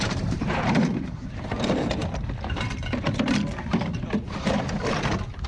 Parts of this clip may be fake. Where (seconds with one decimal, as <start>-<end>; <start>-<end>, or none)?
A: 0.0-2.0